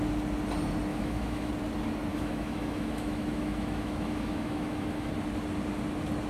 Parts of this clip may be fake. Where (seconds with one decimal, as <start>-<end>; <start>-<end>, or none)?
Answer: 0.9-1.5; 2.1-5.1